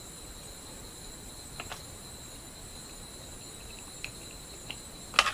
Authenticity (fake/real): real